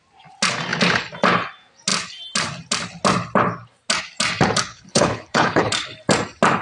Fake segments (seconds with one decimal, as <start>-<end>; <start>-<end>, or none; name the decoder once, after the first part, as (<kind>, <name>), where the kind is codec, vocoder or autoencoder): 4.7-5.7 (codec, HILCodec)